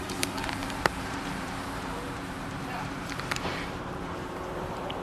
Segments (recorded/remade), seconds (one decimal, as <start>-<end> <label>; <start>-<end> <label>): 0.0-5.0 remade